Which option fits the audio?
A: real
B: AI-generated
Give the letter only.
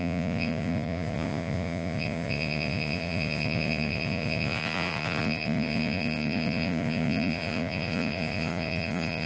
B